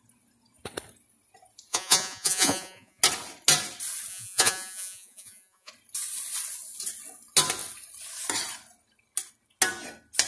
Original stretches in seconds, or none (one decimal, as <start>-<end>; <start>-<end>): 0.0-1.7; 3.0-4.1; 5.7-10.3